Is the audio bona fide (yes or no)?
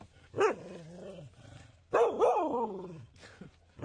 yes